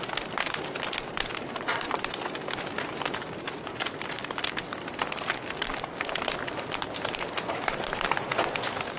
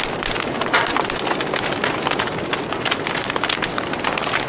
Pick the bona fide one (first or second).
second